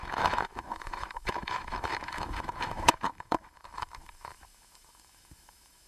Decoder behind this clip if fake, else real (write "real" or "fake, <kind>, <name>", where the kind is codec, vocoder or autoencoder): fake, autoencoder, DAC-VAE